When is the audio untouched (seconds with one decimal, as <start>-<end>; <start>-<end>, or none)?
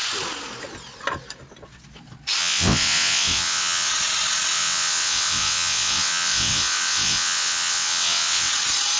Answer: 0.0-2.4; 3.9-4.5; 8.5-9.0